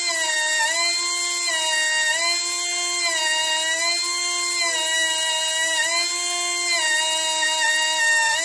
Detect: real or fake real